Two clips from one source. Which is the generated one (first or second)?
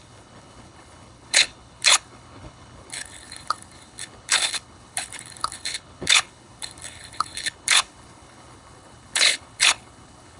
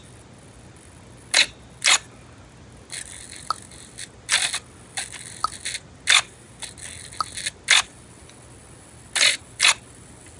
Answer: first